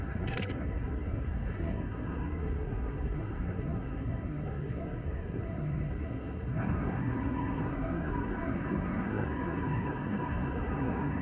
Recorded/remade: remade